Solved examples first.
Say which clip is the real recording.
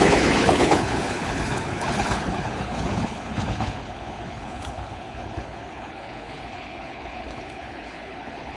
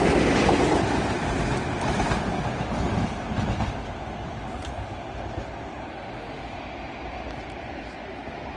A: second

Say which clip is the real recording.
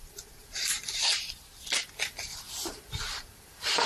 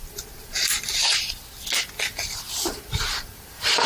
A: second